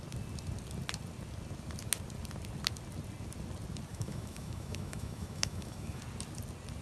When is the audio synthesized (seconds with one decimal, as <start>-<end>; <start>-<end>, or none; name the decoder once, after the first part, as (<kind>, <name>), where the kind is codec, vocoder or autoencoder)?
3.9-6.0 (autoencoder, DAC-VAE)